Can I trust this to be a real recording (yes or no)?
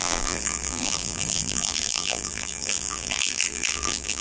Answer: no